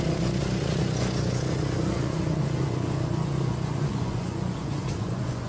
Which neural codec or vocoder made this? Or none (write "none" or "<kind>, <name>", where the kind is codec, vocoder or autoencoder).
vocoder, Vocos